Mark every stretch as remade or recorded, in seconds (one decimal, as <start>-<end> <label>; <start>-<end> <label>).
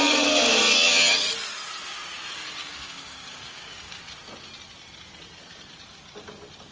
0.0-2.6 recorded; 2.6-4.0 remade; 4.0-6.7 recorded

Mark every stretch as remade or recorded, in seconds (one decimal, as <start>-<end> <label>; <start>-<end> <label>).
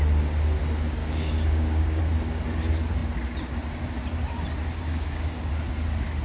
0.0-1.0 recorded; 1.0-2.0 remade; 2.0-4.8 recorded; 4.8-5.5 remade; 5.5-6.2 recorded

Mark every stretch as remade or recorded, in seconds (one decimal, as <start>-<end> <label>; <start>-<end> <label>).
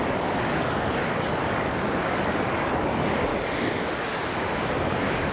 0.0-3.3 remade; 3.3-4.7 recorded; 4.7-5.3 remade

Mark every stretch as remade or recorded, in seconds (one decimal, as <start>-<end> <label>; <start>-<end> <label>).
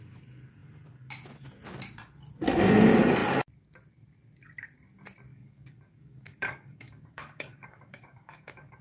0.0-5.3 recorded; 5.3-8.8 remade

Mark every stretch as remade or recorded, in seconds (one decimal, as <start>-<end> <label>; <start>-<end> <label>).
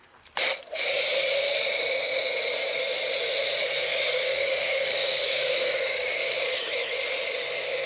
0.0-3.9 recorded; 3.9-6.7 remade; 6.7-7.9 recorded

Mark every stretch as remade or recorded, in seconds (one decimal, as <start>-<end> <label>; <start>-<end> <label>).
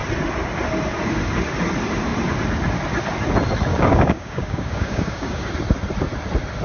0.0-3.7 recorded; 3.7-5.5 remade; 5.5-6.6 recorded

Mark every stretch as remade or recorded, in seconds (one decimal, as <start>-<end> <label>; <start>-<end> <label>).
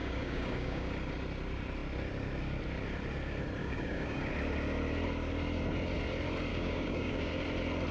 0.0-0.9 remade; 0.9-3.6 recorded; 3.6-4.3 remade; 4.3-6.5 recorded; 6.5-7.3 remade; 7.3-7.9 recorded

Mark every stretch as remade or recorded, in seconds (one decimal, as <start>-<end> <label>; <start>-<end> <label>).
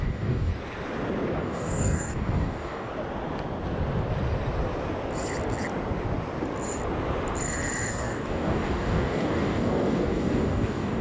0.0-0.5 remade; 0.5-1.4 recorded; 1.4-2.9 remade; 2.9-7.9 recorded; 7.9-11.0 remade